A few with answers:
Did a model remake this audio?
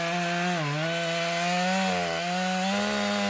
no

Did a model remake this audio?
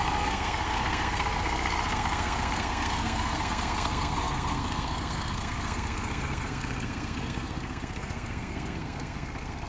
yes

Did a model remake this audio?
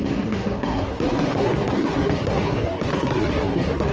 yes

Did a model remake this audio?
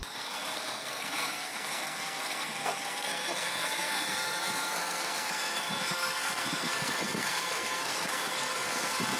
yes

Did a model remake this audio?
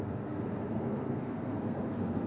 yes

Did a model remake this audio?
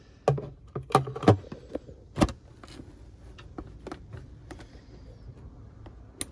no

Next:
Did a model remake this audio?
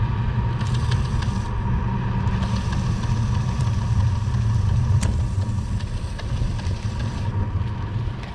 no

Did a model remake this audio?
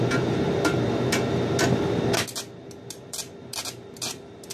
no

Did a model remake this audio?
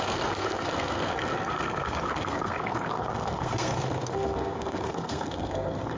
yes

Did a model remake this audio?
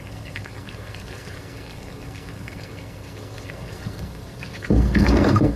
yes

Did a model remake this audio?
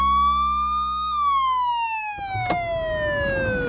no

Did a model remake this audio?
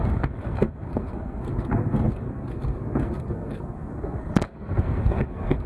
yes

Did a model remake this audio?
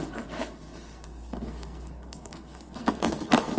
yes